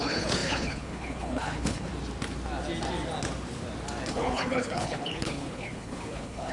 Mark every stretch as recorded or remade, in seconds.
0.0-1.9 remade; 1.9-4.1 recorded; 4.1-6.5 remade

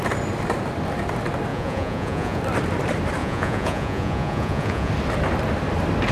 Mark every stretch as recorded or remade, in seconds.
0.0-1.5 recorded; 1.5-2.4 remade; 2.4-3.2 recorded; 3.2-4.9 remade; 4.9-6.1 recorded

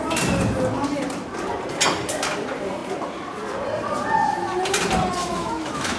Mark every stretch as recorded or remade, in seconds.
0.0-5.2 recorded; 5.2-6.0 remade

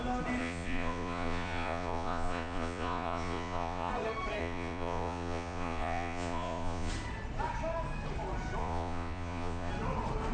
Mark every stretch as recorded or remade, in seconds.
0.0-0.4 recorded; 0.4-3.9 remade; 3.9-4.4 recorded; 4.4-6.9 remade; 6.9-8.6 recorded; 8.6-9.7 remade; 9.7-10.3 recorded

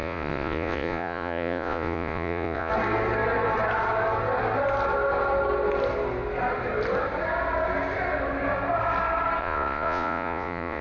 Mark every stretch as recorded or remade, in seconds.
0.0-2.7 remade; 2.7-9.4 recorded; 9.4-10.8 remade